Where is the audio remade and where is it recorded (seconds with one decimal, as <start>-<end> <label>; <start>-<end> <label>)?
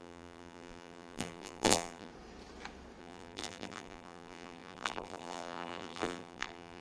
0.0-2.1 remade; 2.1-3.0 recorded; 3.0-6.8 remade